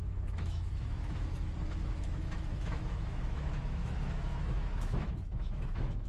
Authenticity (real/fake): fake